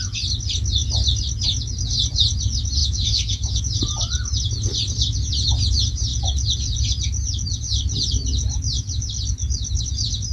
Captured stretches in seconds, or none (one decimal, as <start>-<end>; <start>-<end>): 0.0-2.8; 3.6-10.3